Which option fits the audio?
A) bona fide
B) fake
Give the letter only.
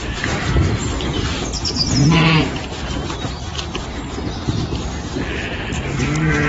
A